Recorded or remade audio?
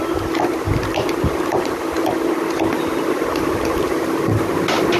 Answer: recorded